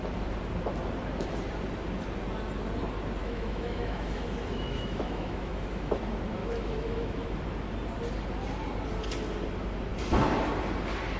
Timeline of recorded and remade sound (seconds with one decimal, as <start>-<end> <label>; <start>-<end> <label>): 0.0-3.2 recorded; 3.2-6.0 remade; 6.0-6.4 recorded; 6.4-7.4 remade; 7.4-11.2 recorded